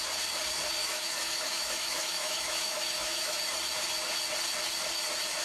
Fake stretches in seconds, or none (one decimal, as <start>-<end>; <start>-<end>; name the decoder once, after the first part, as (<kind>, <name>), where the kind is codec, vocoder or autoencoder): 0.8-3.4 (autoencoder, DAC-VAE)